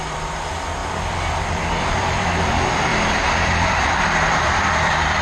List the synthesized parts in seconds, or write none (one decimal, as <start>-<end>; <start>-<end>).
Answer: 0.0-0.8; 1.3-2.9; 3.5-5.2